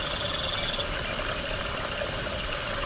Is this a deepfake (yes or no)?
no